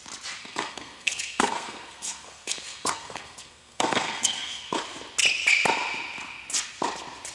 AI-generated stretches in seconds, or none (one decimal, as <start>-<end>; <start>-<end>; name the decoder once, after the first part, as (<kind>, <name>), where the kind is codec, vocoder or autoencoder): 0.4-4.8 (codec, SNAC)